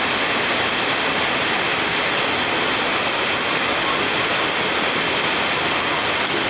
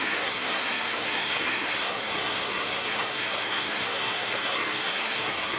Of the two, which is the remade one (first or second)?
second